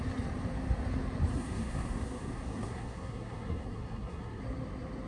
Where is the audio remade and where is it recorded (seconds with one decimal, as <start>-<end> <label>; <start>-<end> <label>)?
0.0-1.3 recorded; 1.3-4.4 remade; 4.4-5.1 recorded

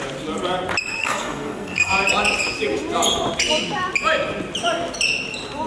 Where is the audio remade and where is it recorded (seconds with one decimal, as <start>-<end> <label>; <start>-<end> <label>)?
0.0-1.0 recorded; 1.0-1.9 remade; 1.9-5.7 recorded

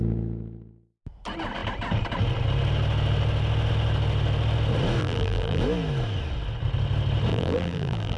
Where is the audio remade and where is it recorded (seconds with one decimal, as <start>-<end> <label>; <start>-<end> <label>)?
0.0-5.0 recorded; 5.0-5.6 remade; 5.6-7.3 recorded; 7.3-8.2 remade

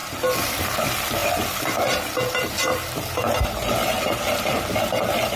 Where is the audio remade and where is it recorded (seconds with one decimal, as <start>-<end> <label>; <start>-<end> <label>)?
0.0-0.5 recorded; 0.5-1.2 remade; 1.2-4.4 recorded; 4.4-5.4 remade

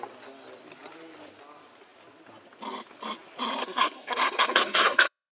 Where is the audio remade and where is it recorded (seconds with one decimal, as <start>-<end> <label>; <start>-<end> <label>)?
0.0-3.6 recorded; 3.6-5.3 remade

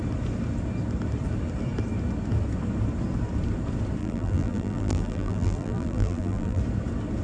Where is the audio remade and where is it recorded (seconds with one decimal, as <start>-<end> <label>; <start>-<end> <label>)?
0.0-4.0 recorded; 4.0-6.6 remade; 6.6-7.2 recorded

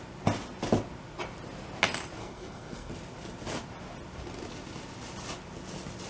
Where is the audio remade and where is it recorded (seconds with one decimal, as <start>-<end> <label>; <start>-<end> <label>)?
0.0-2.2 recorded; 2.2-2.9 remade; 2.9-6.1 recorded